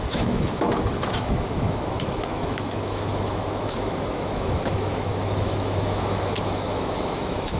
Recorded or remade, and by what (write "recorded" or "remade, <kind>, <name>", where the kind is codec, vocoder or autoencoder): remade, autoencoder, DAC-VAE